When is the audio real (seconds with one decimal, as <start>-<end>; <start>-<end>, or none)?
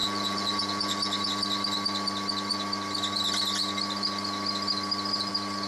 1.3-5.7